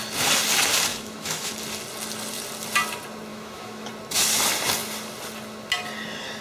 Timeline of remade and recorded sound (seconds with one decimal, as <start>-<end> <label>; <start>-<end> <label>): 0.0-0.9 recorded; 0.9-1.5 remade; 1.5-3.3 recorded; 3.3-3.9 remade; 3.9-6.4 recorded